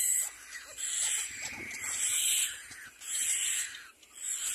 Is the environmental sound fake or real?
real